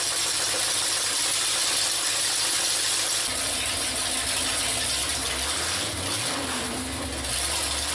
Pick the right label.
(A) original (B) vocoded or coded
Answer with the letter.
A